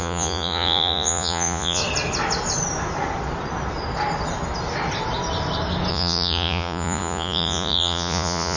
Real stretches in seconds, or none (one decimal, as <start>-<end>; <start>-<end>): 1.8-5.9